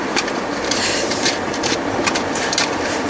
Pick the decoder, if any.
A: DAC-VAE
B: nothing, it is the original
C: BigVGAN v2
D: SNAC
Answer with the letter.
C